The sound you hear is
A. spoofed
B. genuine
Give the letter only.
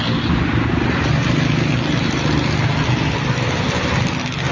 B